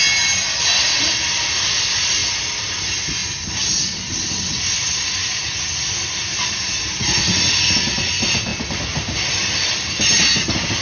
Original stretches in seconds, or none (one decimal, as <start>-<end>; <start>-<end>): 0.0-10.8